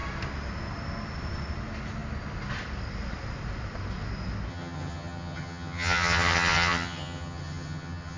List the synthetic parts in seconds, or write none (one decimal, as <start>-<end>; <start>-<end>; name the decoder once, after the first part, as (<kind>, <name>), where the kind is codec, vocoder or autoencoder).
4.5-8.2 (vocoder, HiFi-GAN)